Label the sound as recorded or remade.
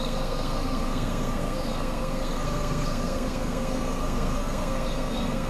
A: remade